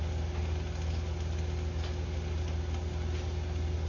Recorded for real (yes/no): yes